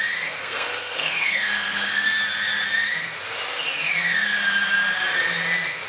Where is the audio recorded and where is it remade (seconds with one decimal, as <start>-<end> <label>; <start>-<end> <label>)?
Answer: 0.0-0.4 recorded; 0.4-2.2 remade; 2.2-5.9 recorded